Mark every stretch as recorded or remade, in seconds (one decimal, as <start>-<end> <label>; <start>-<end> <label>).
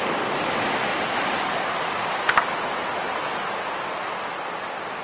0.0-5.0 recorded